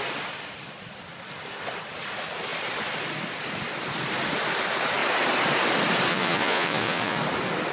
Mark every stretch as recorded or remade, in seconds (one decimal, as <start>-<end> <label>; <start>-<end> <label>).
0.0-6.1 recorded; 6.1-7.2 remade; 7.2-7.7 recorded